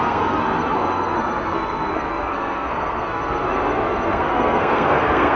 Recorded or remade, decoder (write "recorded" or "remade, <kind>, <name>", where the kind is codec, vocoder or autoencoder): remade, codec, SNAC